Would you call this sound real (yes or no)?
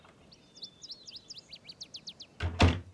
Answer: yes